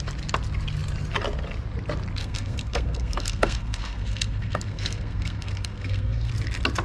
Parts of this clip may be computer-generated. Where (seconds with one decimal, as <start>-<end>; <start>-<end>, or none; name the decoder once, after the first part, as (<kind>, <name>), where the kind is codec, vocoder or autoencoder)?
2.2-6.3 (codec, SNAC)